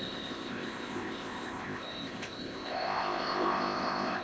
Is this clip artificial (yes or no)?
yes